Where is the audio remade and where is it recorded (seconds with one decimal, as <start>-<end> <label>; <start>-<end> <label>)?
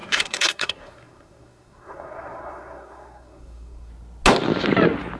0.0-3.9 remade; 3.9-5.2 recorded